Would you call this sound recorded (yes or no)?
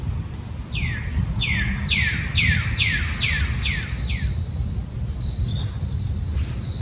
yes